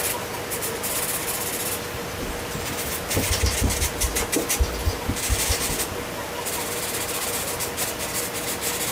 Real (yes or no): no